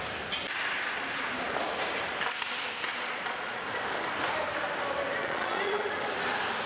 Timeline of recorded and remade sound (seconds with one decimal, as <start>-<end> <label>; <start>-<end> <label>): 0.0-2.9 recorded; 2.9-3.6 remade; 3.6-5.2 recorded; 5.2-6.1 remade; 6.1-6.7 recorded